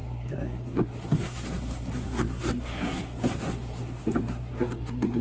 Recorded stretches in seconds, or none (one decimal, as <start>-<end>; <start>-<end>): none